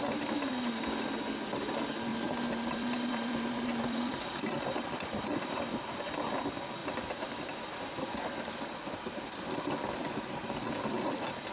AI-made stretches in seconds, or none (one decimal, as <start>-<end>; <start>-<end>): 2.1-5.8; 6.8-8.5